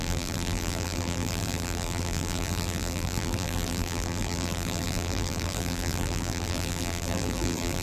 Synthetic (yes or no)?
yes